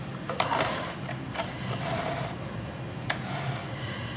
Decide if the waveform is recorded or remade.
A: remade